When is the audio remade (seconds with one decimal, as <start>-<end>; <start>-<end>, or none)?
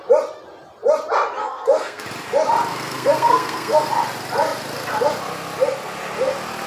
1.4-2.0; 2.7-3.9